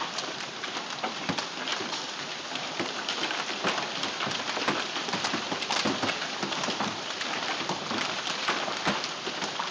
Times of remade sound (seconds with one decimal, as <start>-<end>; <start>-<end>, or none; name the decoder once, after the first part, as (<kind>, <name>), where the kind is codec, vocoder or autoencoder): 0.0-1.7 (vocoder, BigVGAN v2); 2.7-9.7